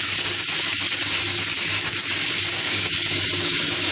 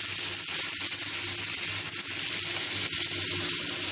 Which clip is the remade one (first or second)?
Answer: first